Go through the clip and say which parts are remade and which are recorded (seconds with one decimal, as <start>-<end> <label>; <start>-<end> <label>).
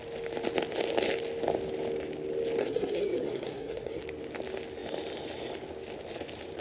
0.0-2.6 recorded; 2.6-4.0 remade; 4.0-6.6 recorded